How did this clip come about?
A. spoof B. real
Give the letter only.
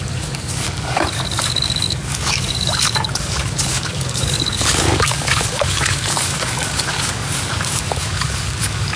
A